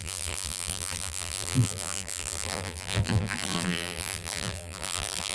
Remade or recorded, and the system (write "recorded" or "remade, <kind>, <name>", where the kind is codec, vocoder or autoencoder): remade, vocoder, BigVGAN v2